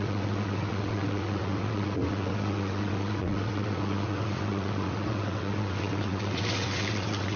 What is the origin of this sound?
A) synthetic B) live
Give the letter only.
A